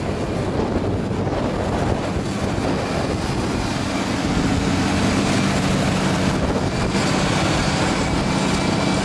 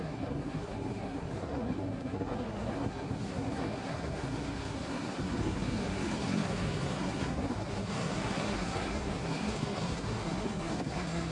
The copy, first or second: second